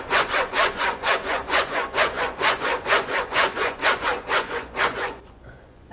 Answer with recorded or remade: remade